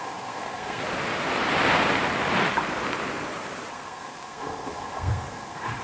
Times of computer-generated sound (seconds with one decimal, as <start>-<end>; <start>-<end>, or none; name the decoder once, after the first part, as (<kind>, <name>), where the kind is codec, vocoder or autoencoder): 0.0-0.8 (codec, SNAC); 3.7-5.8